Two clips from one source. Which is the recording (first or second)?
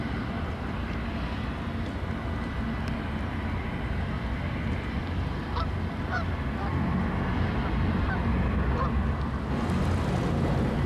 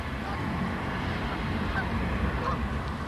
first